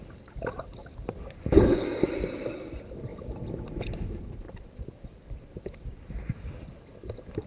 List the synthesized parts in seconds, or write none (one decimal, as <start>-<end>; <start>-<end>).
none